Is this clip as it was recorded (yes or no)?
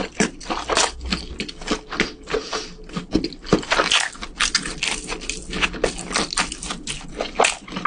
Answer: yes